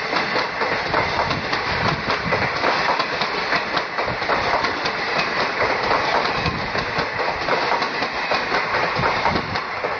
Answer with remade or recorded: recorded